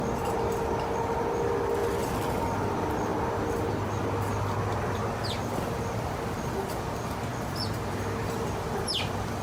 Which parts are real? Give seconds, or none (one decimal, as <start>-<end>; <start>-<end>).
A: 0.0-9.4